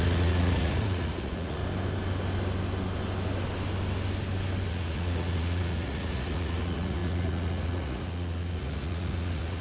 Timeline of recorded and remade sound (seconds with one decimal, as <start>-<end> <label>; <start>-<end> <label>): 0.0-1.6 remade; 1.6-4.7 recorded; 4.7-9.6 remade